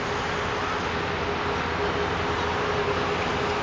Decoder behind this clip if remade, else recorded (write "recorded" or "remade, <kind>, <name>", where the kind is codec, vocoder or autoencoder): recorded